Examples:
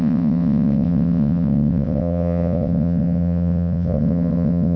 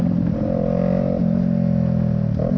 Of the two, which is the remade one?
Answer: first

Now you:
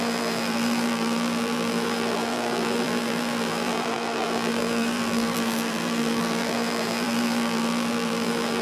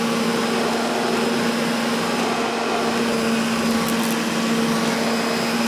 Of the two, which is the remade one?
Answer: first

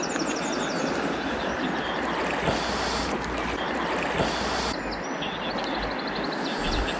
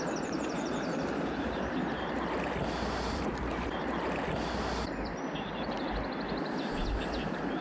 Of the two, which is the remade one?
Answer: second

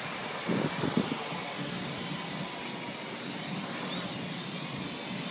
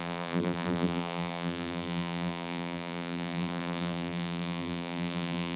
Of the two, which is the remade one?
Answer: second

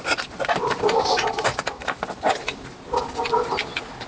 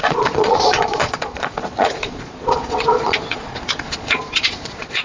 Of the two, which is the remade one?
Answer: second